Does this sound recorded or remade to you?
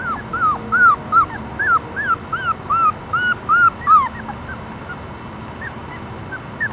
recorded